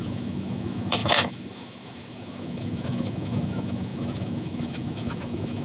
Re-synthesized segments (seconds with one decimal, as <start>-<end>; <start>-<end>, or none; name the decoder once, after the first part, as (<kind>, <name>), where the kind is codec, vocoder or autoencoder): 0.0-5.6 (autoencoder, DAC-VAE)